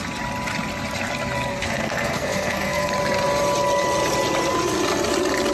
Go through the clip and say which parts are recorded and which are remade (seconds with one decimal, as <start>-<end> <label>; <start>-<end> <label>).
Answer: 0.0-1.5 recorded; 1.5-2.9 remade; 2.9-5.5 recorded